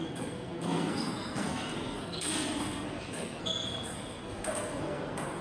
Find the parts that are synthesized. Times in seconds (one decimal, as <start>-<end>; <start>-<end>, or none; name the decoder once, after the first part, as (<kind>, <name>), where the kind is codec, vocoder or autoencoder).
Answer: 0.0-5.4 (codec, SNAC)